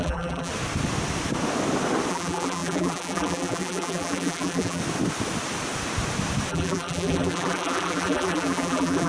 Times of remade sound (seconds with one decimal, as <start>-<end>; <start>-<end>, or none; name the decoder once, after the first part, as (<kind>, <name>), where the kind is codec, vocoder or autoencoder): 0.0-0.5 (vocoder, BigVGAN v2); 2.1-4.8; 6.5-9.1